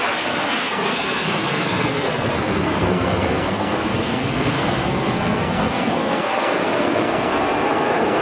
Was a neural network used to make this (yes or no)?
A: yes